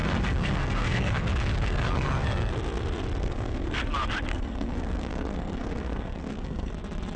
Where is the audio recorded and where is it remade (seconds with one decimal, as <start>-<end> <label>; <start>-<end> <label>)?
0.0-2.5 remade; 2.5-3.2 recorded; 3.2-3.8 remade; 3.8-4.3 recorded; 4.3-6.7 remade; 6.7-7.2 recorded